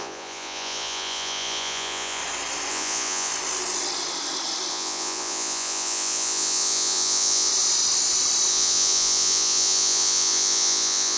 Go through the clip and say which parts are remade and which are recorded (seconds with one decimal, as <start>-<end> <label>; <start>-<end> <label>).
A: 0.0-2.2 remade; 2.2-2.7 recorded; 2.7-3.3 remade; 3.3-4.7 recorded; 4.7-7.5 remade; 7.5-8.5 recorded; 8.5-11.2 remade